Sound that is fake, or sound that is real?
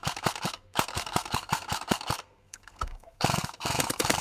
fake